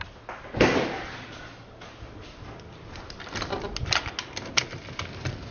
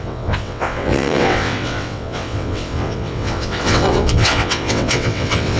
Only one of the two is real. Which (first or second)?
first